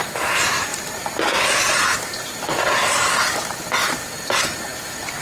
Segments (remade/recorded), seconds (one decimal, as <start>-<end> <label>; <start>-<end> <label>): 0.0-5.2 recorded